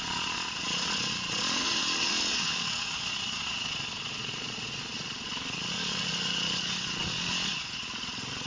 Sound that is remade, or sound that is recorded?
remade